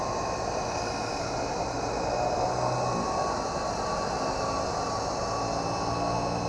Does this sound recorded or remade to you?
recorded